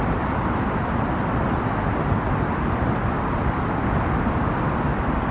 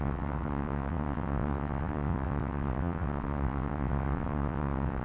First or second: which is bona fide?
first